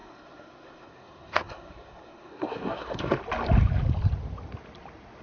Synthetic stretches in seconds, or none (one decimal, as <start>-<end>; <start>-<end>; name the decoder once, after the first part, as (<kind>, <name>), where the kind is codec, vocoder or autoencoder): 0.0-3.1 (codec, SNAC)